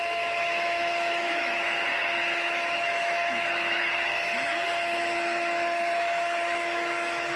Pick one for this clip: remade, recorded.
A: remade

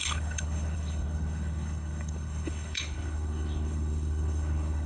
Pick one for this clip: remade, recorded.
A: remade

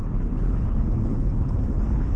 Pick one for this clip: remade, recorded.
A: remade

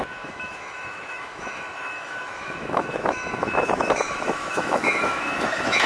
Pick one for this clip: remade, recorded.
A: remade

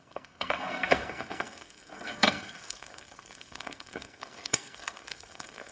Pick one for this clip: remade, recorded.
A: remade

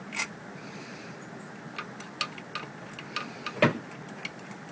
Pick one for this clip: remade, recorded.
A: recorded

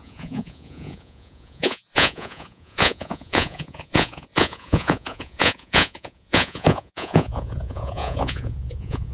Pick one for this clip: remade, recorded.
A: remade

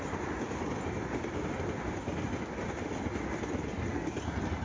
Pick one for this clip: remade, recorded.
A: recorded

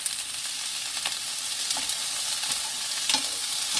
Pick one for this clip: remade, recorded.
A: recorded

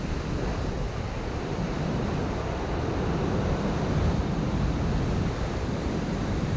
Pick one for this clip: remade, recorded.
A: recorded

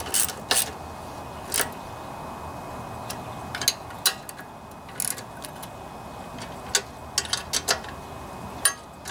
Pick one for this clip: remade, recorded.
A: recorded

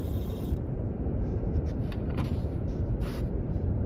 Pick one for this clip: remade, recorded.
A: remade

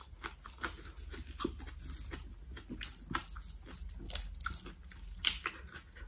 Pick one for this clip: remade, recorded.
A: recorded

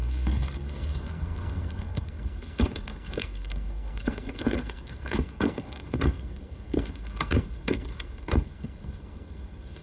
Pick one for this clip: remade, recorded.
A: remade